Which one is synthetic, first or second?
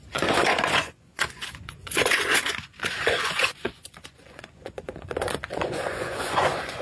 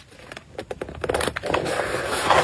first